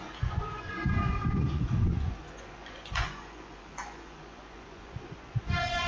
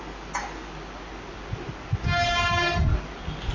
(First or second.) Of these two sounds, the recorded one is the second